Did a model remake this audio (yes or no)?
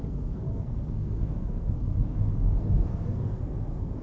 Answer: yes